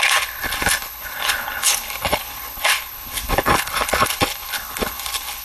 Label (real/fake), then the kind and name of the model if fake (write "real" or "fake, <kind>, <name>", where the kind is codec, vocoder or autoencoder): fake, codec, HILCodec